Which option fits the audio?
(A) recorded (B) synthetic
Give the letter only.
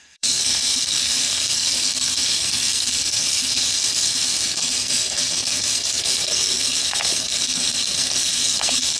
B